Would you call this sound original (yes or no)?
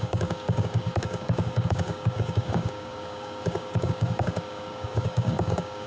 no